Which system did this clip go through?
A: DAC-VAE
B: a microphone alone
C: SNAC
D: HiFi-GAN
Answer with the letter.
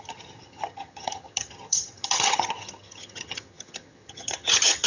D